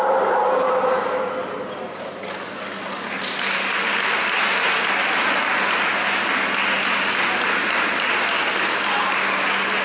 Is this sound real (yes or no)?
yes